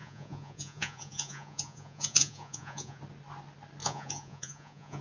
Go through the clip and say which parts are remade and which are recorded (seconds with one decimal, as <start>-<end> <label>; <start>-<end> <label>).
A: 0.0-3.0 remade; 3.0-3.8 recorded; 3.8-5.0 remade